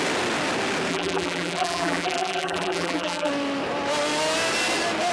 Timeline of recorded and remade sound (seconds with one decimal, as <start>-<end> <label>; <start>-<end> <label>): 0.0-0.9 recorded; 0.9-3.3 remade; 3.3-5.1 recorded